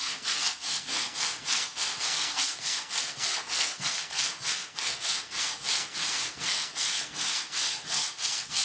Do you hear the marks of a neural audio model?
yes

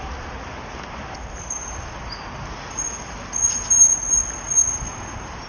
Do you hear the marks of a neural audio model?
no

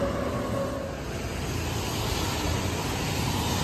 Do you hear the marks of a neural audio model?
no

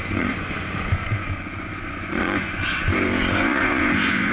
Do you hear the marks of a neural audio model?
yes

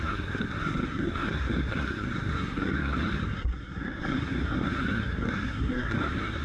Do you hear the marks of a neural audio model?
yes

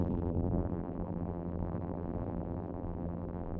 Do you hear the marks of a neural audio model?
yes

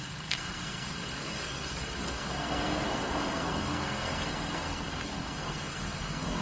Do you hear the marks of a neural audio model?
yes